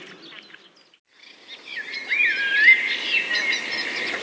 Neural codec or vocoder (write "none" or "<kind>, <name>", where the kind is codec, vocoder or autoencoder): none